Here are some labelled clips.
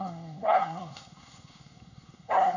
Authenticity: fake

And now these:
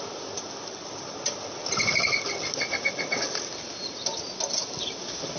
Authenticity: real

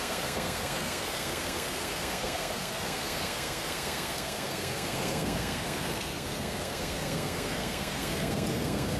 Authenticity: fake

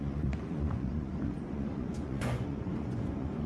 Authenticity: fake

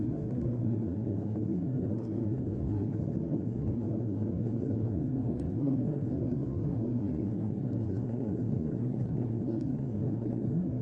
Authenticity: fake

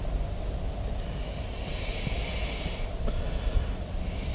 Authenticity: real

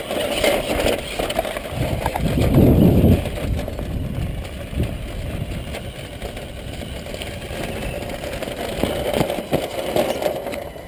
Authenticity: real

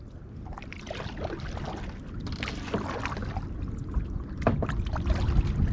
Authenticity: real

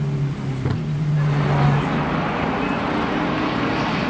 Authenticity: real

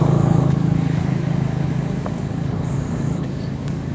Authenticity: fake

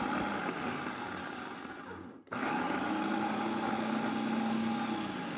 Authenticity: real